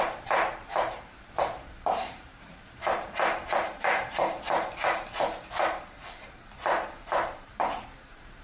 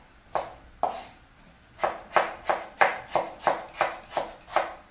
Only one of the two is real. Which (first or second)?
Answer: second